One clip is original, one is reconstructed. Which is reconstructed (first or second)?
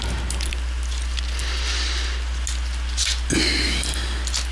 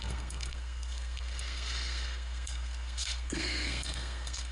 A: second